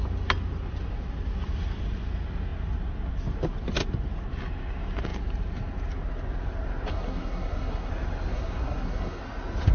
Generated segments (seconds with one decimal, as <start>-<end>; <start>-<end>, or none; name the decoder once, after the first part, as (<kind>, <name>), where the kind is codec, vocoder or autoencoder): 6.9-7.9 (codec, SNAC); 8.3-9.2